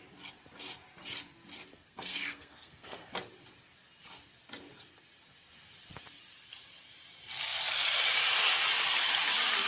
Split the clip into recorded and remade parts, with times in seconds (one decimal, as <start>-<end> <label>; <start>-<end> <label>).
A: 0.0-1.7 recorded; 1.7-3.1 remade; 3.1-9.7 recorded